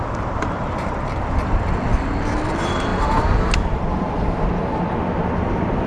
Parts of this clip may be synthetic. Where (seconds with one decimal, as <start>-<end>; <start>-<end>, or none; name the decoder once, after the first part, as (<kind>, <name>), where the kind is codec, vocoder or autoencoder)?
0.0-1.9 (vocoder, BigVGAN v2); 2.5-2.9; 3.7-4.6; 5.3-5.9